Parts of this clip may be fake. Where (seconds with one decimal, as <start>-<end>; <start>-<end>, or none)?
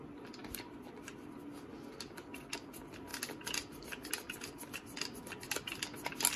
none